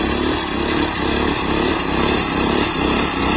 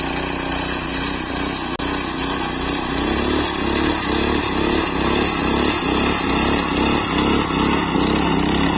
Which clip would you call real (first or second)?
second